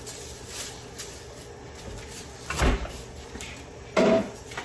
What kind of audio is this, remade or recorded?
recorded